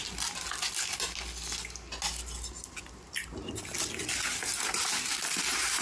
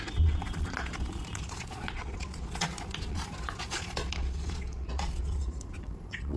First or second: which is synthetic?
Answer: second